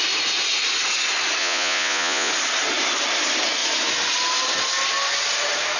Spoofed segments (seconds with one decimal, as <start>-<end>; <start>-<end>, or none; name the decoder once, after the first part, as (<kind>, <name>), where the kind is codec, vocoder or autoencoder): 1.4-2.3 (vocoder, Vocos)